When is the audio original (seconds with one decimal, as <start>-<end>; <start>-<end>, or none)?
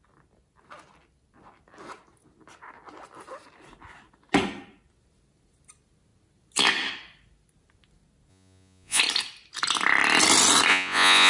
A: 0.0-8.3; 9.0-10.7